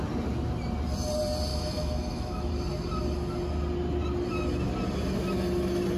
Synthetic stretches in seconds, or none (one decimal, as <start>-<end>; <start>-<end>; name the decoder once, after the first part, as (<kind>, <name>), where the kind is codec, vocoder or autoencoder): 1.5-2.5 (autoencoder, DAC-VAE)